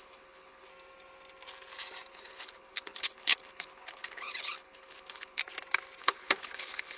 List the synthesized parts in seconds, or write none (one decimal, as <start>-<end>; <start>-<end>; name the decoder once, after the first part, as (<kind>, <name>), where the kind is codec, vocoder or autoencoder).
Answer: 0.0-0.7 (codec, HILCodec); 2.1-5.4; 6.0-7.0